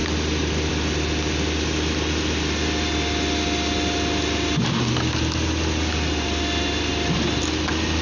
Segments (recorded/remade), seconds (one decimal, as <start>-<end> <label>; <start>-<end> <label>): 0.0-8.0 recorded